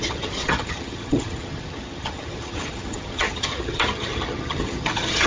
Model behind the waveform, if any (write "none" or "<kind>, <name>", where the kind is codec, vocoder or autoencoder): vocoder, HiFi-GAN